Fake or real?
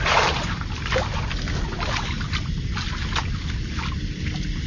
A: real